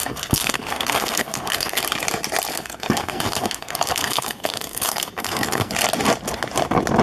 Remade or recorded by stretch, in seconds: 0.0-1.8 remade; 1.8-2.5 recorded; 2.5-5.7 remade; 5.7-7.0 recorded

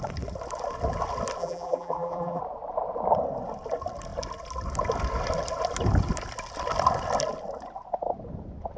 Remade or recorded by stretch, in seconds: 0.0-1.4 recorded; 1.4-2.4 remade; 2.4-8.8 recorded

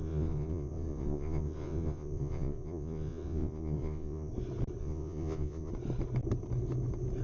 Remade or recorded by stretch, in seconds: 0.0-4.3 remade; 4.3-4.8 recorded; 4.8-5.7 remade; 5.7-7.2 recorded